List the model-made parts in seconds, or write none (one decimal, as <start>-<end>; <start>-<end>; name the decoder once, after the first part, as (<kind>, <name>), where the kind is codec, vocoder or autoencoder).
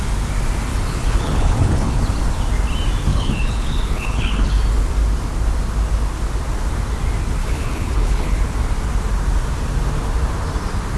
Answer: 0.7-2.0 (codec, HILCodec); 3.1-4.6; 7.4-8.4